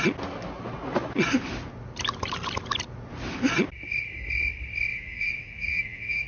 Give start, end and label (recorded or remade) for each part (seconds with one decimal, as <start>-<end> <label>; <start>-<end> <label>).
0.0-4.9 recorded; 4.9-6.3 remade